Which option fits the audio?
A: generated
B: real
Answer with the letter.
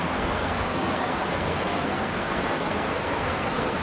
A